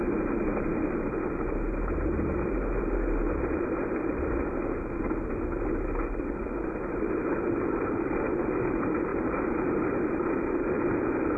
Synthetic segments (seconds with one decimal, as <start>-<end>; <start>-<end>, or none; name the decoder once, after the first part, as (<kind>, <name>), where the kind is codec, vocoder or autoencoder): none

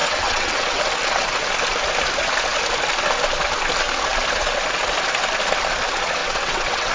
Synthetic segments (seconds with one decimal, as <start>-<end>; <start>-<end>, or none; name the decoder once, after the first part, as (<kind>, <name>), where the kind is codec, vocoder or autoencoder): 0.0-0.8 (vocoder, WaveNeXt); 6.2-6.9